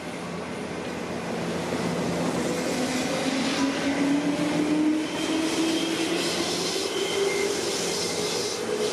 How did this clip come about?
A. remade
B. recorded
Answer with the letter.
B